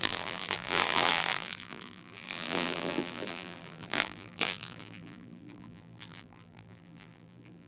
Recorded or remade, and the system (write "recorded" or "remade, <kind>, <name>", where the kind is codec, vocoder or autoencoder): remade, vocoder, BigVGAN v2